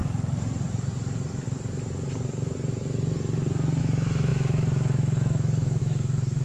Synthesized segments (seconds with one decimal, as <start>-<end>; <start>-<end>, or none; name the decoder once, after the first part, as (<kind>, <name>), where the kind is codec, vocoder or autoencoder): 3.8-6.4 (autoencoder, DAC-VAE)